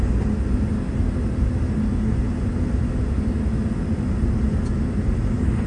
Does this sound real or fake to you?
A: real